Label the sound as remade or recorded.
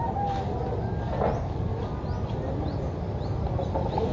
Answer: recorded